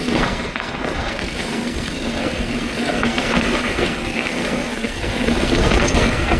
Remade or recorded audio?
remade